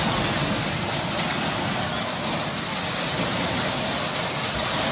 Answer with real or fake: real